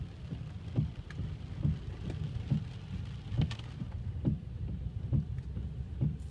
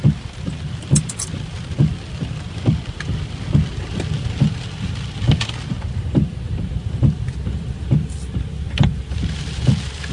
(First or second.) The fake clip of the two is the second